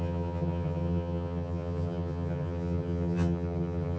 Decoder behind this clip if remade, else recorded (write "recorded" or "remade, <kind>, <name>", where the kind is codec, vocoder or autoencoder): remade, vocoder, HiFi-GAN